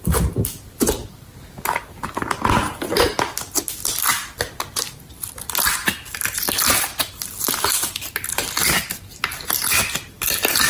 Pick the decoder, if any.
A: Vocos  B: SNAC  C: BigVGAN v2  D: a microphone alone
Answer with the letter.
D